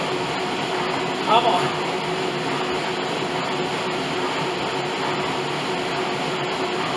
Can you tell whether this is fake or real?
real